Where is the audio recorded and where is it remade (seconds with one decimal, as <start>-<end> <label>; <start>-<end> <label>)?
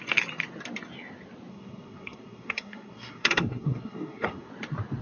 0.0-1.5 recorded; 1.5-4.5 remade; 4.5-5.0 recorded